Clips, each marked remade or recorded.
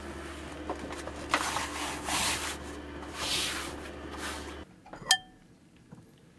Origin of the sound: recorded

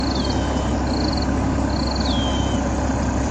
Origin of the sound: recorded